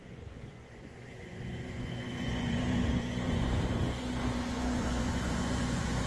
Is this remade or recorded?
remade